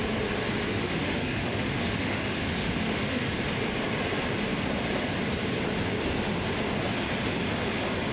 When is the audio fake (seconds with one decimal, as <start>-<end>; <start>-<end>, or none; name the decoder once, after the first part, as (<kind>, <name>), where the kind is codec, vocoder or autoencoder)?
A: 0.7-3.3 (autoencoder, DAC-VAE)